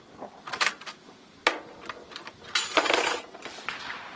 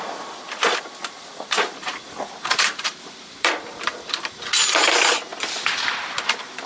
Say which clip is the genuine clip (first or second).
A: first